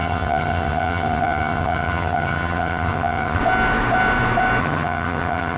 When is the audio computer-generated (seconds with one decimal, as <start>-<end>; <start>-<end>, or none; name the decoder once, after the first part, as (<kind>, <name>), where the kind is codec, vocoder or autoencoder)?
0.0-3.4 (vocoder, HiFi-GAN); 4.6-5.6

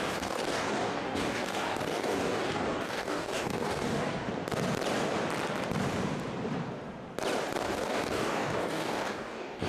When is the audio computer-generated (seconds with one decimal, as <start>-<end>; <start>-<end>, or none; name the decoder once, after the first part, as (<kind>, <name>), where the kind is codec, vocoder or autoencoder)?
0.0-4.3 (codec, DAC); 7.6-9.7

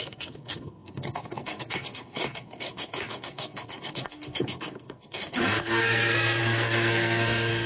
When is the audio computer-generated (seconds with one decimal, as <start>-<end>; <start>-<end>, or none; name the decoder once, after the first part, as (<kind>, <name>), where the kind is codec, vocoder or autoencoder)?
0.0-7.7 (codec, SNAC)

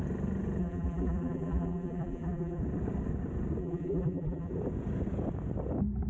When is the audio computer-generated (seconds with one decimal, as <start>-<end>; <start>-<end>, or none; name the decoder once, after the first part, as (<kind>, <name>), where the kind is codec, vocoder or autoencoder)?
0.6-2.6 (vocoder, BigVGAN v2); 3.6-4.5

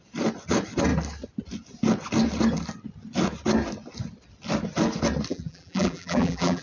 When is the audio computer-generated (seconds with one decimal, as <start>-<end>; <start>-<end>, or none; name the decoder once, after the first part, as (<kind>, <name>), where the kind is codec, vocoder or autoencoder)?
5.3-6.6 (vocoder, BigVGAN v2)

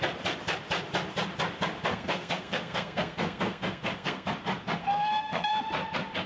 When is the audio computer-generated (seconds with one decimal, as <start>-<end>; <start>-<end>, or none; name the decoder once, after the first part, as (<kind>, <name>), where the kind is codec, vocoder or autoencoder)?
1.9-4.3 (codec, SNAC); 4.8-5.5

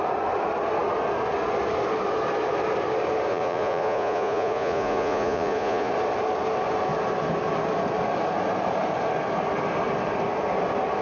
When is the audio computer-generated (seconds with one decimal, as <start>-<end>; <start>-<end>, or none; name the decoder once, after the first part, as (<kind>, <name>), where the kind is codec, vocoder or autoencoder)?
3.3-5.9 (vocoder, Vocos)

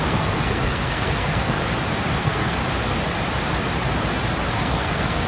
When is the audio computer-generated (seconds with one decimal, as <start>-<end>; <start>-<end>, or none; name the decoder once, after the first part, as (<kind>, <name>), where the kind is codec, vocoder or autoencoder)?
0.0-1.6 (codec, SNAC); 2.2-2.6; 4.5-5.3